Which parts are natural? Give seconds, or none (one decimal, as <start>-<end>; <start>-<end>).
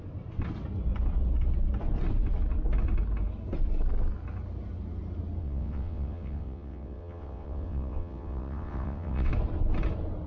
0.0-5.4; 9.3-10.3